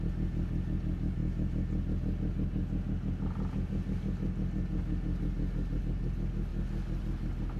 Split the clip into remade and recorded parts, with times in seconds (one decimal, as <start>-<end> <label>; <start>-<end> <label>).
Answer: 0.0-7.6 recorded